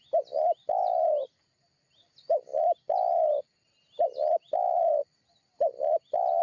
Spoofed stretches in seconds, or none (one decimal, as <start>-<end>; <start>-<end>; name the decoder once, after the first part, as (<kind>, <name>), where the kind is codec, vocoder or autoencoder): none